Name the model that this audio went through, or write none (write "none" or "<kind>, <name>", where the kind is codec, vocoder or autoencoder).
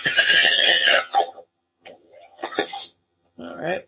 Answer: vocoder, HiFi-GAN